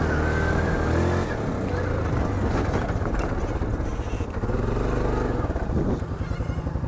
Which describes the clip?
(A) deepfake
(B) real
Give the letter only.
B